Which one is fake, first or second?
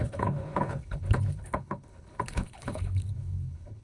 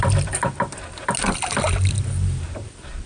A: first